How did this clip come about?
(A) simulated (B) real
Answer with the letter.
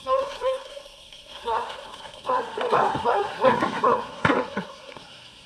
A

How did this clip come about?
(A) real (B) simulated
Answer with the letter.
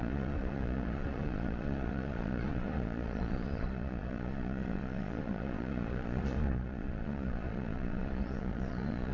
B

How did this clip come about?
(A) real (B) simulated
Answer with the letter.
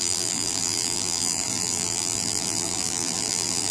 B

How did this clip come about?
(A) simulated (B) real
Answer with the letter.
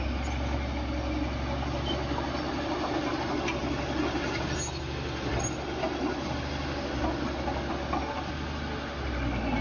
B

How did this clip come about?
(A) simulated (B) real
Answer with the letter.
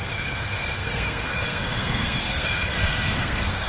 A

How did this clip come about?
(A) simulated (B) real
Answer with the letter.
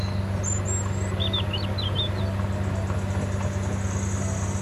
B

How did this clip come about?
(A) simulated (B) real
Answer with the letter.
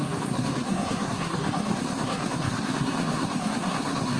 A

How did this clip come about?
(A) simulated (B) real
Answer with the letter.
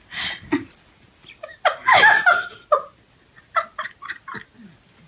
B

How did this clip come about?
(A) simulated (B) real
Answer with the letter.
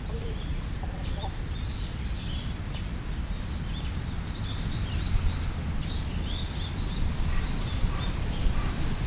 A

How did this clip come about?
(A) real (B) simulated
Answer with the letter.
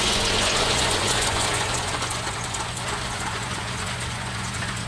B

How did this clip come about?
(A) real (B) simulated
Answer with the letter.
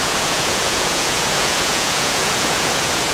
B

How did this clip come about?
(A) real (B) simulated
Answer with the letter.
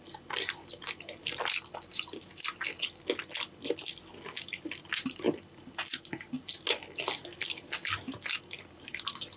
A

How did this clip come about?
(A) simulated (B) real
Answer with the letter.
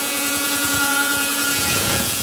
A